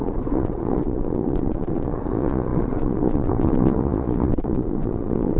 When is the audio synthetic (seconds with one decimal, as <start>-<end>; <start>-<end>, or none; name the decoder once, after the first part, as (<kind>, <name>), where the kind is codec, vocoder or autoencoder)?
0.0-5.4 (vocoder, Vocos)